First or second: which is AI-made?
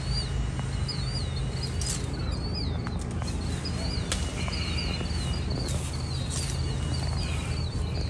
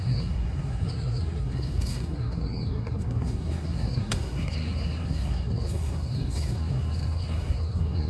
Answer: second